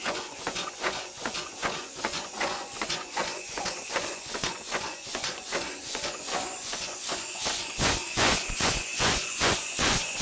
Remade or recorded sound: remade